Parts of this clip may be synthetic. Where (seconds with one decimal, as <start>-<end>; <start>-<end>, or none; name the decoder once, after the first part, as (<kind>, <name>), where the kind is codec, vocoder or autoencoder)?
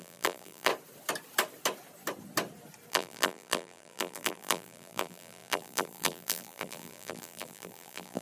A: 0.0-0.7 (vocoder, BigVGAN v2); 2.9-8.2